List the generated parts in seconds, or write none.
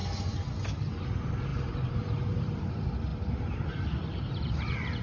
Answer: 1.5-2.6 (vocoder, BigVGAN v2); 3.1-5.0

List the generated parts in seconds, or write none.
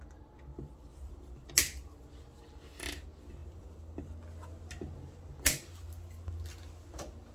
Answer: 0.9-1.5 (vocoder, BigVGAN v2); 3.4-4.0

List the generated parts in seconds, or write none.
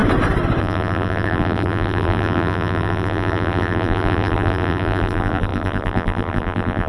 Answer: 0.6-6.9 (vocoder, BigVGAN v2)